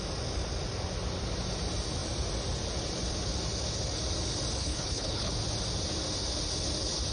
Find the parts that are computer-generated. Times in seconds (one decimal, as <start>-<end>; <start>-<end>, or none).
4.6-5.3